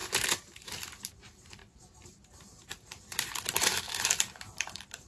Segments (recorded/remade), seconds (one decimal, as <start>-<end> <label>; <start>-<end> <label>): 0.0-5.1 remade